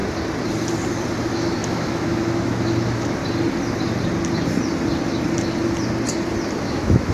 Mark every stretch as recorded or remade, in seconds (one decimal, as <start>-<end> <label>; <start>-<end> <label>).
0.0-1.2 recorded; 1.2-3.2 remade; 3.2-6.6 recorded; 6.6-7.1 remade